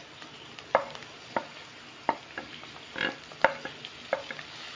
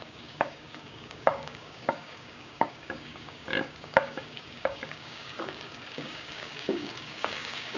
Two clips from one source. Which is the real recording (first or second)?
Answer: first